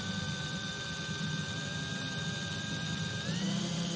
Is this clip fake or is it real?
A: fake